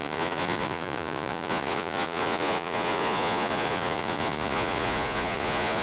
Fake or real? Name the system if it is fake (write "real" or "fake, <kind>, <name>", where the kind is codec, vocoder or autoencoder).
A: fake, vocoder, Vocos